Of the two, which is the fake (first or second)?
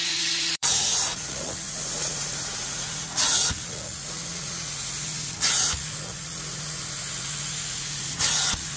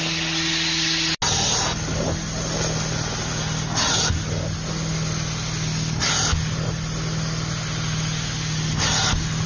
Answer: first